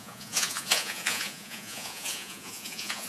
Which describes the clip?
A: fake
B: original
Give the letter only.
A